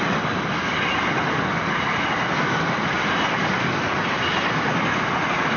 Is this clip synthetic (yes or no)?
no